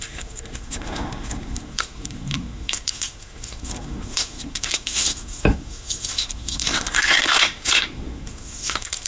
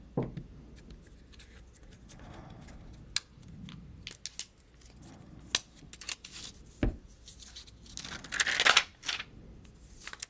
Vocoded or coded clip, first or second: first